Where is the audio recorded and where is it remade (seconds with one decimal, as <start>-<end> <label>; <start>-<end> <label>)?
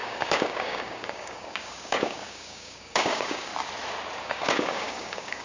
0.0-3.5 remade; 3.5-4.2 recorded; 4.2-5.4 remade